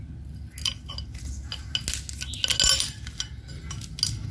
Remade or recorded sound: recorded